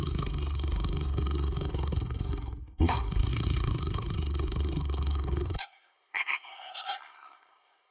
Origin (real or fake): fake